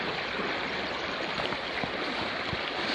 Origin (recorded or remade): recorded